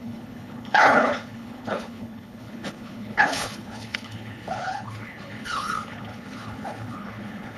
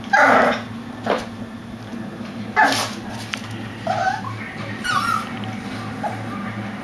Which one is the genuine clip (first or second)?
second